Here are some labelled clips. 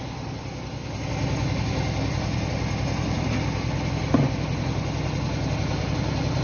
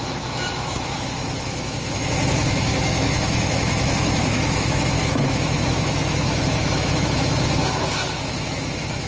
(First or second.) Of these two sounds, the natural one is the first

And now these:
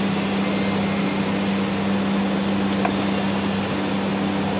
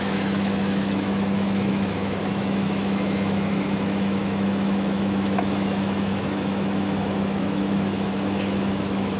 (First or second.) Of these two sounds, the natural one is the first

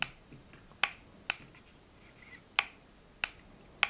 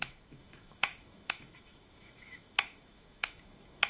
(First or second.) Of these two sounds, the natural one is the first